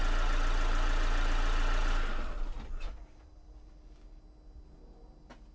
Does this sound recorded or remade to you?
recorded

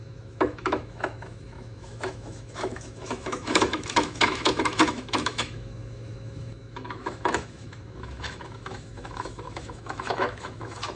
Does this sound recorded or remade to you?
remade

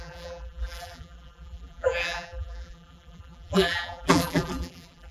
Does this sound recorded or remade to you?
remade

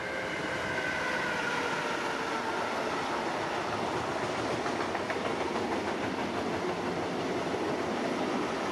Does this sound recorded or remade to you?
recorded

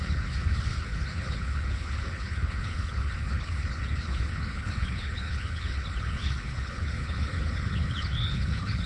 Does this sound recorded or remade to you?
remade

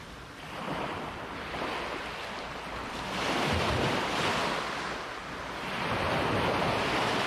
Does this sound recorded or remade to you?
recorded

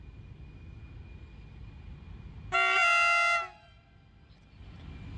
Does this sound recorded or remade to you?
recorded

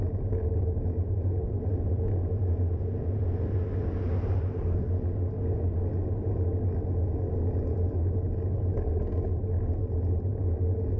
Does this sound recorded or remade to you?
recorded